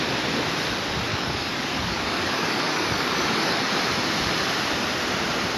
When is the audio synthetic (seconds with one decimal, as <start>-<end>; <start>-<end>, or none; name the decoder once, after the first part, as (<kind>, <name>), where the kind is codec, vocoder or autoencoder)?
1.1-3.7 (codec, DAC)